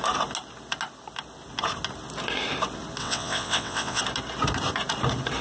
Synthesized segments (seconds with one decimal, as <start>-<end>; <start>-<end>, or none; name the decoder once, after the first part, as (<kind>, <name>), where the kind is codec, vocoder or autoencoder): 3.0-4.0 (vocoder, WaveNeXt)